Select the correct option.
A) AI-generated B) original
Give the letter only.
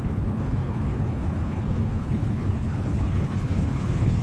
A